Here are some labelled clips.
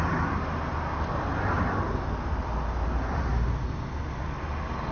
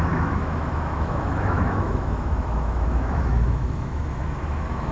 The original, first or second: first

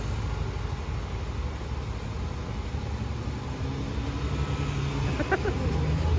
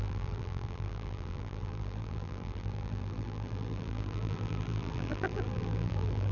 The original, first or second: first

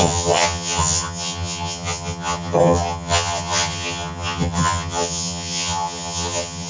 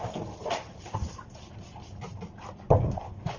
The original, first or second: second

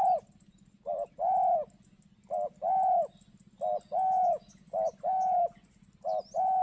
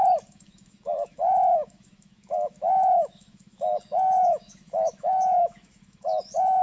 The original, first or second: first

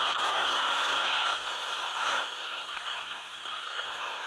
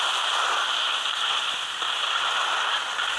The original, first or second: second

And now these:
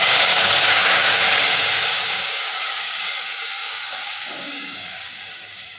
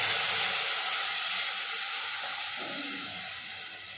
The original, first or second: second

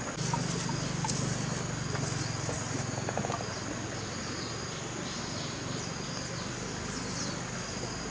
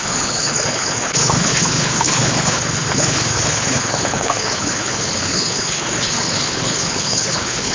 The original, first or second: first